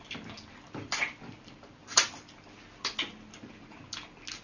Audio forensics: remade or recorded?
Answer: recorded